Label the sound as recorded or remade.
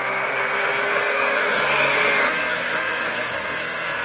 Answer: remade